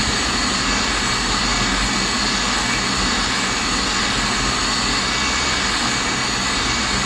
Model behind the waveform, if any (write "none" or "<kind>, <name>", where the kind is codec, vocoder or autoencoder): none